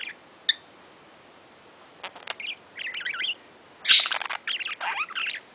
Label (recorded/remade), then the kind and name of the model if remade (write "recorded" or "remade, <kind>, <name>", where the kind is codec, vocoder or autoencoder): recorded